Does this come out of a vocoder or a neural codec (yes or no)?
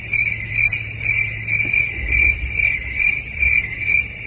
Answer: no